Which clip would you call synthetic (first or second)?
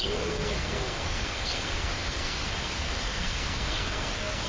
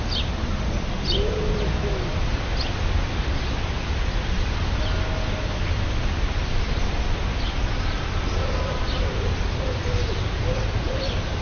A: first